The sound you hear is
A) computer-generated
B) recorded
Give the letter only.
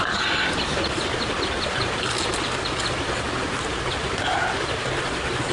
B